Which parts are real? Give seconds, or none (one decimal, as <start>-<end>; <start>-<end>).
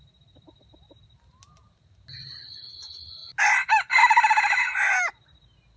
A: 0.0-5.8